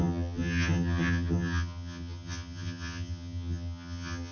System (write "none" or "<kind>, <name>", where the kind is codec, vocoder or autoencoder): vocoder, HiFi-GAN